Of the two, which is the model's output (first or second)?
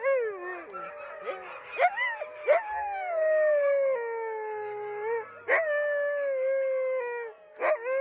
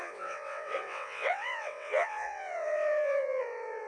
second